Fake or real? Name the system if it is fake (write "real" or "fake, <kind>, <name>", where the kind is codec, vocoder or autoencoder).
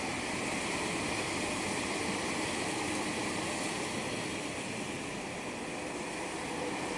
real